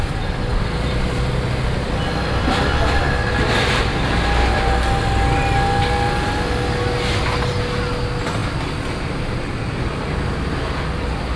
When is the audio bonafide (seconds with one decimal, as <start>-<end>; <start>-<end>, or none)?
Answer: 0.0-11.4